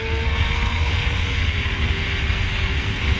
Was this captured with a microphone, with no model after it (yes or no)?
no